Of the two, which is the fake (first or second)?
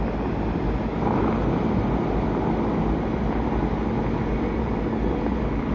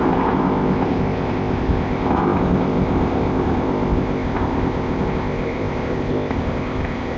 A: second